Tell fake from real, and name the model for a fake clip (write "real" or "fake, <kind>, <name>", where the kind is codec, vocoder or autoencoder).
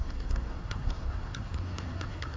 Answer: fake, codec, SNAC